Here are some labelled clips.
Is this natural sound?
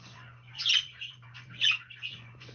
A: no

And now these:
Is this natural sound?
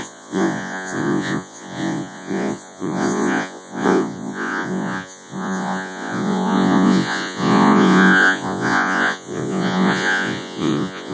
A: no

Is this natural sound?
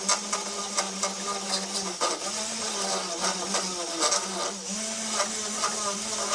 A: yes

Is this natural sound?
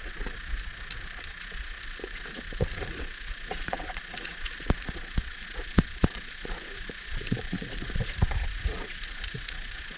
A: no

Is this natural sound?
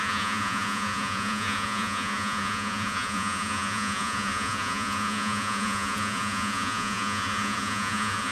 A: no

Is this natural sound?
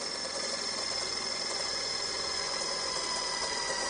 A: no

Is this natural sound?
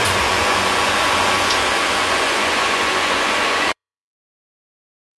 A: no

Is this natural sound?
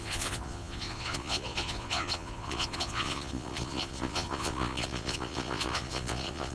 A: no